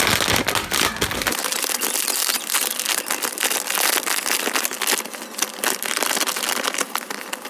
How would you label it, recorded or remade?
recorded